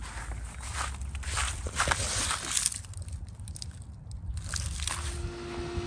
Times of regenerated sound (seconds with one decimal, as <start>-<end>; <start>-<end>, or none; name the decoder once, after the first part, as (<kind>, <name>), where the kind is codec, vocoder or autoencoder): none

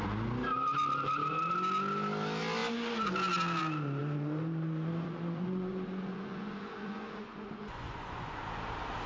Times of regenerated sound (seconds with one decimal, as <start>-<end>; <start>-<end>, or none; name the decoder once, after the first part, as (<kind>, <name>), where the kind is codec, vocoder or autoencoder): 4.0-8.4 (vocoder, Vocos)